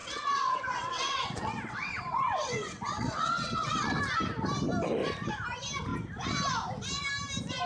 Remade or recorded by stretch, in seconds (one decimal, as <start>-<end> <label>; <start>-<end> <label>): 0.0-4.0 remade; 4.0-7.7 recorded